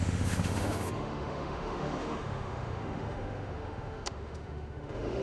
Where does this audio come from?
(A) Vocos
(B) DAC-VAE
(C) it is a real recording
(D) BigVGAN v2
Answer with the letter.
B